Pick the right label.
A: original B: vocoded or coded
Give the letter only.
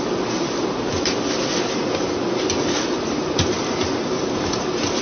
A